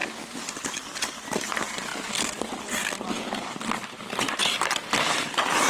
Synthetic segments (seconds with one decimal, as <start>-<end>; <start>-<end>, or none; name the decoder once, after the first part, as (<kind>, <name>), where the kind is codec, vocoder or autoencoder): 0.0-4.4 (vocoder, BigVGAN v2); 4.9-5.7